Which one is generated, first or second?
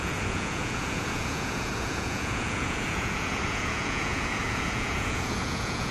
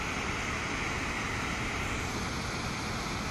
first